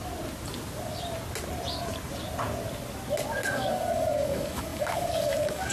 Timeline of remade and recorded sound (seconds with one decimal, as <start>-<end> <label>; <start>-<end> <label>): 0.0-3.4 recorded; 3.4-5.7 remade